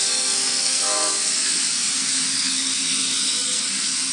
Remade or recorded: remade